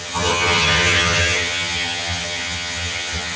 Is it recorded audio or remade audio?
remade